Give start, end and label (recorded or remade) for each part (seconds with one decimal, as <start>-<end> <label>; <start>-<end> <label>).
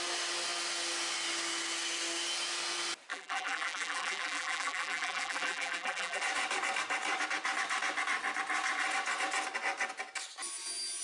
0.0-3.1 recorded; 3.1-6.2 remade; 6.2-11.0 recorded